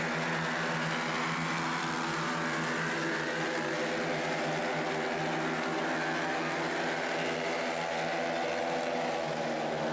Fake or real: real